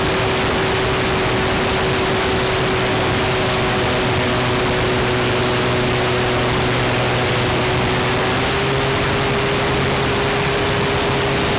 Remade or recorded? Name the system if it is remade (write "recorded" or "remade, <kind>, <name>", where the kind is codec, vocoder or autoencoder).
recorded